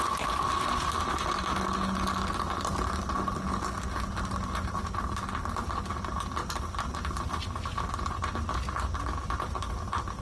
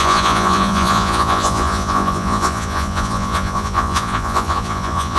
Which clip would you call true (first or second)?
first